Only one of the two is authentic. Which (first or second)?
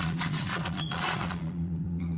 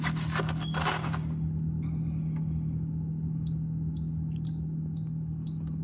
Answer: second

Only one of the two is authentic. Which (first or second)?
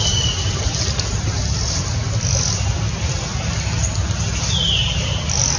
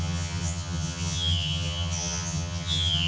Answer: first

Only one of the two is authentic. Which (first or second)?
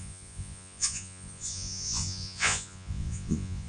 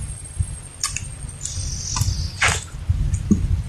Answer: second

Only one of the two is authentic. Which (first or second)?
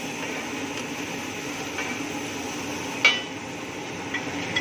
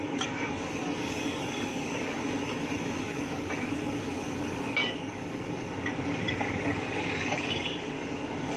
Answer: first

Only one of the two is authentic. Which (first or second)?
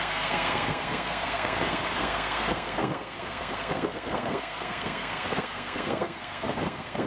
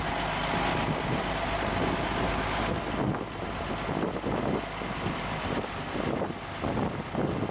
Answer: second